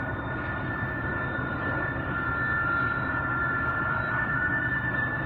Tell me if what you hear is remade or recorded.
recorded